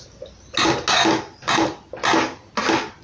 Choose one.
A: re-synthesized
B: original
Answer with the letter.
B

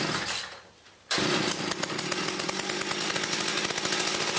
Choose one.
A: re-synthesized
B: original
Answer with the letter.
B